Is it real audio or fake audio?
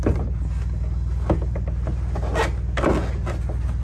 real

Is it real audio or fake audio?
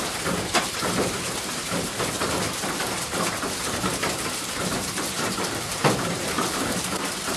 fake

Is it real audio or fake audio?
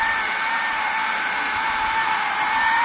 fake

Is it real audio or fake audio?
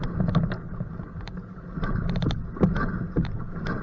real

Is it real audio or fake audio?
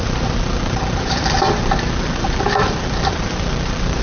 fake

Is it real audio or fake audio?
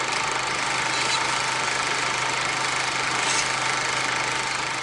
fake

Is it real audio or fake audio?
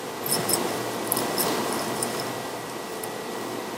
fake